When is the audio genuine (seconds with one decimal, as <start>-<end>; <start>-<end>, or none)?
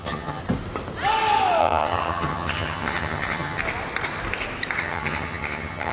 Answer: 0.4-1.6; 3.6-4.8